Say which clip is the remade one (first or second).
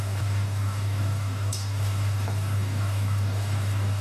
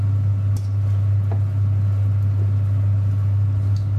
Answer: first